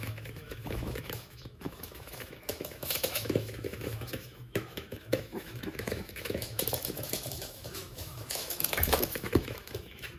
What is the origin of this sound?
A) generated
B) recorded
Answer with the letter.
A